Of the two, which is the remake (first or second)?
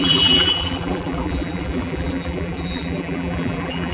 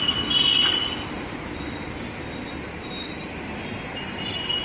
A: first